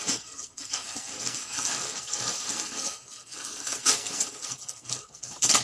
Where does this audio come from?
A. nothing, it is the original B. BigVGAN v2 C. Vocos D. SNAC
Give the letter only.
D